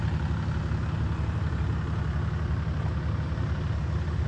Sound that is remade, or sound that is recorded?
recorded